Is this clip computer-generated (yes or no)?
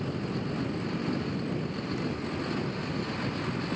no